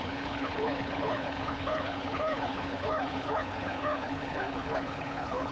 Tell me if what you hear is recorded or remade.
remade